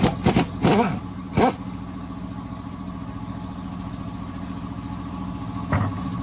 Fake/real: real